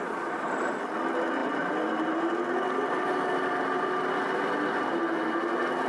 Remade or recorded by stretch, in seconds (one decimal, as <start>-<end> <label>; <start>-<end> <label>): 0.0-5.9 recorded